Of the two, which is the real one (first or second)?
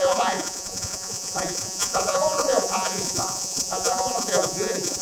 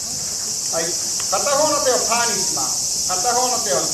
second